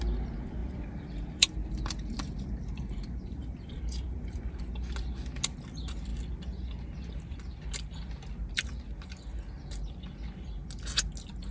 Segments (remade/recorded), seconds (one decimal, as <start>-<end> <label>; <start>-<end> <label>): 0.0-0.6 recorded; 0.6-4.6 remade; 4.6-11.5 recorded